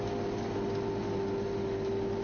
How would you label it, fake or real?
real